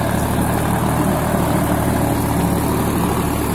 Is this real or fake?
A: real